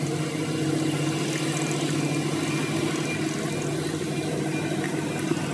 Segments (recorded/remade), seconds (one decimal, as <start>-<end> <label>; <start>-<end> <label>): 0.0-5.5 recorded